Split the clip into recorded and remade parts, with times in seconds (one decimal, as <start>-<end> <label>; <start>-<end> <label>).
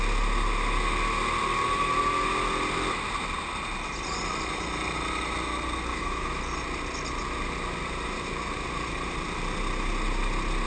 0.0-5.9 recorded; 5.9-6.4 remade; 6.4-10.7 recorded